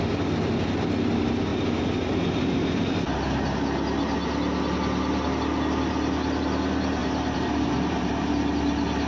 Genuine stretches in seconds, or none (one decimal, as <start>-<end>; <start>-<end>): 0.0-7.0; 8.3-9.1